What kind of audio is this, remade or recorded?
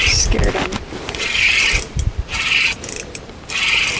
recorded